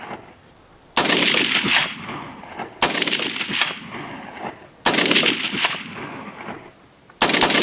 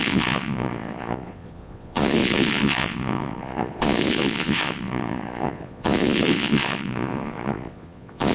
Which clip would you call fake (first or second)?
second